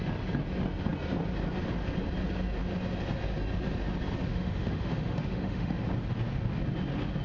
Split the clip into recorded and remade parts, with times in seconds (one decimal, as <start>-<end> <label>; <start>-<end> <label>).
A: 0.0-4.3 recorded; 4.3-5.8 remade; 5.8-7.2 recorded